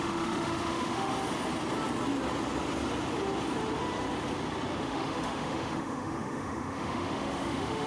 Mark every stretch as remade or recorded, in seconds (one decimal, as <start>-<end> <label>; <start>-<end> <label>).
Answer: 0.0-1.1 remade; 1.1-4.8 recorded; 4.8-7.9 remade